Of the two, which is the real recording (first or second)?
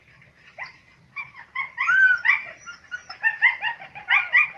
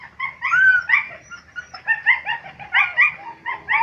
second